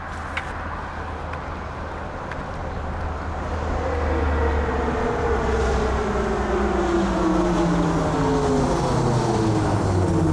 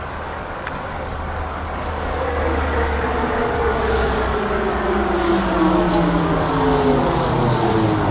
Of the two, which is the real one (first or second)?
first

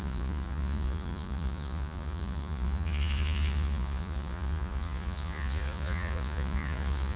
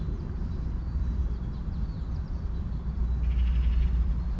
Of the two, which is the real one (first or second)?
second